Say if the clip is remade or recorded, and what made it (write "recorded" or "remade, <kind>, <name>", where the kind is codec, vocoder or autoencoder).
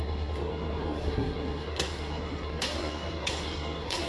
remade, codec, SNAC